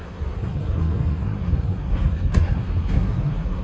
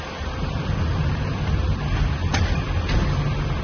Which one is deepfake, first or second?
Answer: first